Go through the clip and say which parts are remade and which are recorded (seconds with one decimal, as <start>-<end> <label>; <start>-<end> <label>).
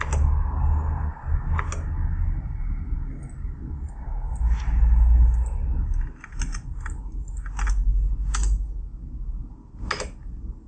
0.0-10.7 recorded